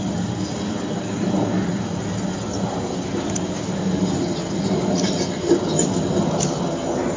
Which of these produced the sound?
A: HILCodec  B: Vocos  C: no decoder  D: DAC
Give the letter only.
C